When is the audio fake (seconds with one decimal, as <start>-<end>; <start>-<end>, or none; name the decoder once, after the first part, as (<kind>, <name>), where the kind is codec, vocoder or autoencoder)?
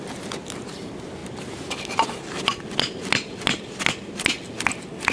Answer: none